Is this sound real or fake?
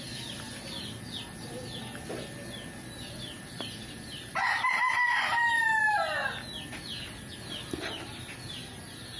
real